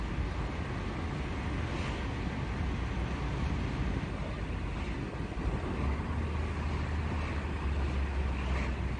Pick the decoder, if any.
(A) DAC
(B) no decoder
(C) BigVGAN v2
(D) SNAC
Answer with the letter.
B